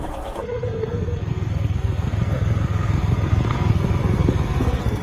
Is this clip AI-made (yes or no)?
yes